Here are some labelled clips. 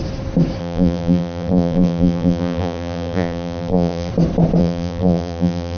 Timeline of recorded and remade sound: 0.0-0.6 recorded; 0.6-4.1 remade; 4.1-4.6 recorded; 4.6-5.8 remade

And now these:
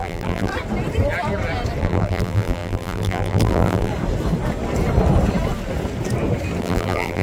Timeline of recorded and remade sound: 0.0-0.5 remade; 0.5-1.8 recorded; 1.8-3.9 remade; 3.9-6.6 recorded; 6.6-7.2 remade

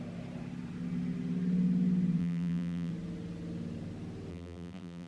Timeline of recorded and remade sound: 0.0-2.2 recorded; 2.2-2.9 remade; 2.9-4.3 recorded; 4.3-5.1 remade

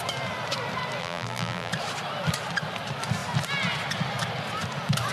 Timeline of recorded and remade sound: 0.0-1.0 recorded; 1.0-1.7 remade; 1.7-5.1 recorded

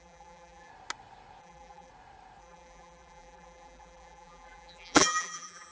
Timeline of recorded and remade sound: 0.0-0.7 remade; 0.7-1.4 recorded; 1.4-1.9 remade; 1.9-2.4 recorded; 2.4-5.7 remade

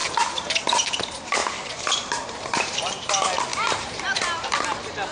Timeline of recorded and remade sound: 0.0-0.5 remade; 0.5-1.4 recorded; 1.4-3.1 remade; 3.1-3.5 recorded; 3.5-4.2 remade; 4.2-5.1 recorded

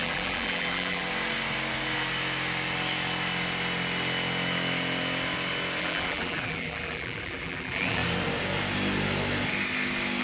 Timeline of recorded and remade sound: 0.0-1.0 remade; 1.0-5.8 recorded; 5.8-8.0 remade; 8.0-10.2 recorded